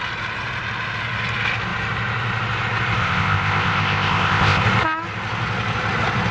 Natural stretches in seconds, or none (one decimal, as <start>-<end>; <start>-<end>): 0.0-3.0; 4.6-6.3